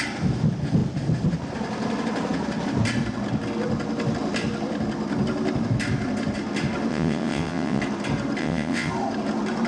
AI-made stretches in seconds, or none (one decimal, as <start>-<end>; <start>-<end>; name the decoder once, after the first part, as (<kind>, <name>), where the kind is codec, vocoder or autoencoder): 6.9-7.8 (vocoder, WaveNeXt); 8.4-8.9